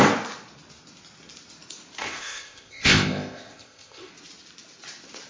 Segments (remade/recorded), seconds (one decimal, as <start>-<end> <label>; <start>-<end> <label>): 0.0-2.0 recorded; 2.0-4.1 remade; 4.1-5.3 recorded